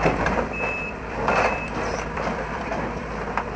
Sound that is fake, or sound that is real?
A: fake